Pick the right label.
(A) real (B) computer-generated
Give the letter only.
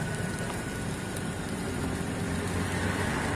A